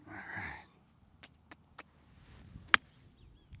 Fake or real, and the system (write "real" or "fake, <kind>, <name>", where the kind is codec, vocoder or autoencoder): real